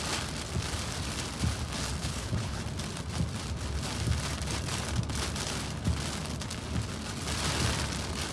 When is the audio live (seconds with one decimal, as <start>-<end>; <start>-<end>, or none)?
0.0-2.0; 2.6-8.3